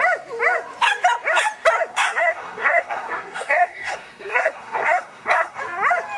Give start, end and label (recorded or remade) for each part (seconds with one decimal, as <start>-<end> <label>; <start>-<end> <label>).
0.0-1.9 recorded; 1.9-5.6 remade; 5.6-6.2 recorded

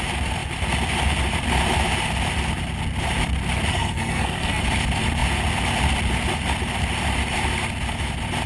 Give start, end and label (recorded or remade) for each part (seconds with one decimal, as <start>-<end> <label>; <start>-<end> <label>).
0.0-3.7 recorded; 3.7-4.6 remade; 4.6-8.5 recorded

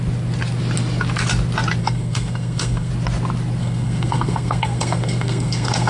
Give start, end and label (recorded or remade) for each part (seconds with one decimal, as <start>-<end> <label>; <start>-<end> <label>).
0.0-1.8 recorded; 1.8-2.9 remade; 2.9-3.6 recorded; 3.6-5.9 remade

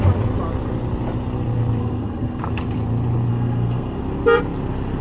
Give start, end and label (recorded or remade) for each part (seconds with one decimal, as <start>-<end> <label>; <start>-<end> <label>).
0.0-1.8 recorded; 1.8-2.4 remade; 2.4-3.3 recorded; 3.3-4.0 remade; 4.0-5.0 recorded

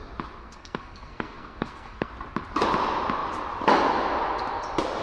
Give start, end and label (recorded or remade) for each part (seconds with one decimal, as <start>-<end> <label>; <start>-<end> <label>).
0.0-0.4 recorded; 0.4-2.1 remade; 2.1-5.0 recorded